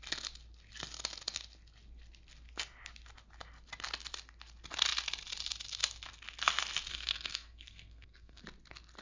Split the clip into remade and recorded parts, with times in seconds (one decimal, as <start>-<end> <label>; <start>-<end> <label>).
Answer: 0.0-6.9 recorded; 6.9-8.4 remade; 8.4-9.0 recorded